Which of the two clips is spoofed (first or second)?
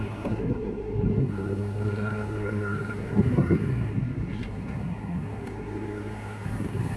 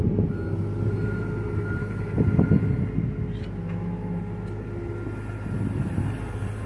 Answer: first